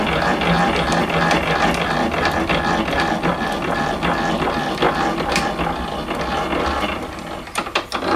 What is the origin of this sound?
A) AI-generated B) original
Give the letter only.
B